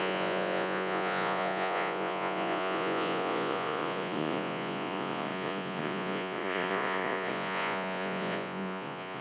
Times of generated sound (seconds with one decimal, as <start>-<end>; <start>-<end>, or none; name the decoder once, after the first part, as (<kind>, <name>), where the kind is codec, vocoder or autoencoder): 0.0-9.2 (vocoder, Vocos)